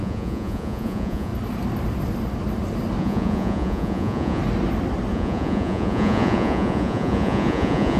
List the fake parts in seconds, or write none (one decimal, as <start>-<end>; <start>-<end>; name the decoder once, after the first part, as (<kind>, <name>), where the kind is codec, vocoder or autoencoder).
0.0-1.3 (vocoder, Vocos); 3.0-4.4; 5.1-8.0